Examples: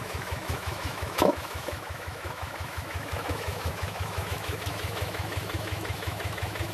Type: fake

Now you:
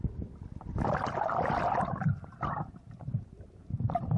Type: real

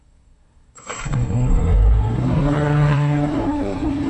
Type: fake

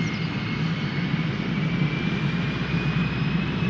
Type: fake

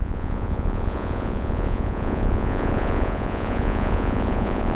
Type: fake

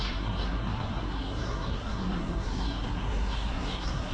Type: fake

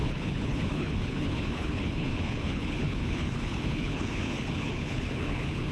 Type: fake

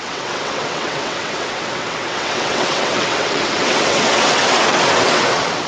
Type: fake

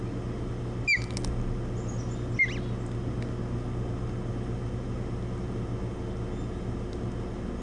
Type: real